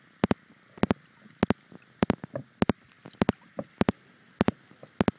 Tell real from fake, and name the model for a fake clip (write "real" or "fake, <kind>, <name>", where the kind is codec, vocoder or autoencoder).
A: real